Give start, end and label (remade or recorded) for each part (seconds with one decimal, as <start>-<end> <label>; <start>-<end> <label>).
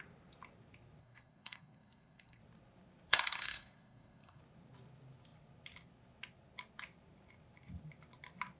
0.0-1.0 recorded; 1.0-2.4 remade; 2.4-3.1 recorded; 3.1-4.4 remade; 4.4-8.6 recorded